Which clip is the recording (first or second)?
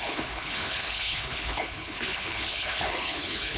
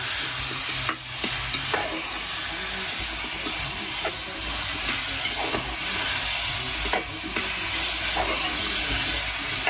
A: second